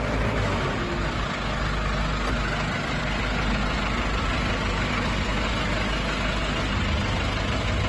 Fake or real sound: real